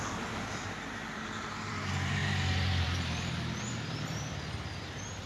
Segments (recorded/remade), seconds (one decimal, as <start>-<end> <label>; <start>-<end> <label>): 0.0-5.3 remade